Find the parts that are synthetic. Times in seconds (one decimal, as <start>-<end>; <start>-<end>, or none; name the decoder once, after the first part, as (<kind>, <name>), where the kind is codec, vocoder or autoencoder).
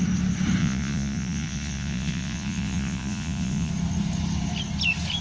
0.6-3.7 (vocoder, Vocos)